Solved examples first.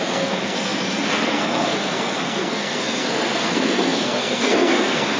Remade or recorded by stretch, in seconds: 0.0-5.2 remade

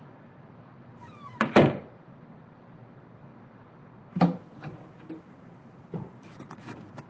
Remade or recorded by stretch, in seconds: 0.0-7.1 remade

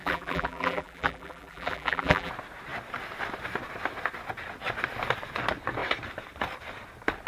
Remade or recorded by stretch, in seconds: 0.0-2.3 remade; 2.3-7.3 recorded

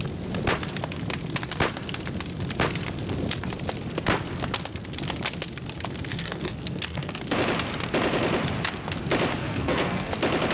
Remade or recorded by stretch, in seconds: 0.0-6.1 recorded; 6.1-7.2 remade; 7.2-9.4 recorded; 9.4-10.1 remade; 10.1-10.5 recorded

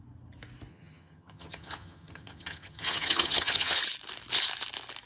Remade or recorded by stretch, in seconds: 0.0-0.7 recorded; 0.7-3.8 remade; 3.8-5.1 recorded